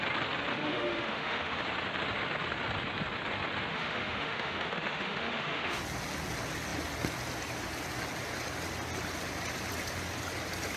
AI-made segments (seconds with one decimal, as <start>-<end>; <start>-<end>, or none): 0.5-1.6; 3.7-5.8